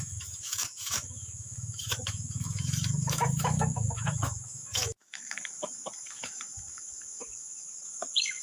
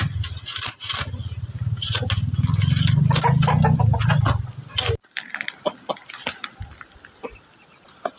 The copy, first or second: first